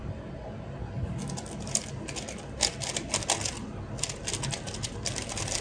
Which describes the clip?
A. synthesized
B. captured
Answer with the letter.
B